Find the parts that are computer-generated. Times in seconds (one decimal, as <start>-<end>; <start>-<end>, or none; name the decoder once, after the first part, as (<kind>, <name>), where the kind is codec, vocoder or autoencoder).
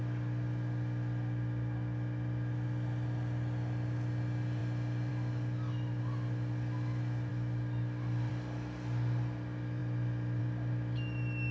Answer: none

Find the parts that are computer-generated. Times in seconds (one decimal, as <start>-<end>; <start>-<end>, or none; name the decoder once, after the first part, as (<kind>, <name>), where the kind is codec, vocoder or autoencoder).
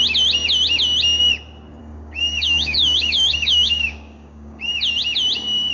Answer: 1.8-4.7 (codec, DAC)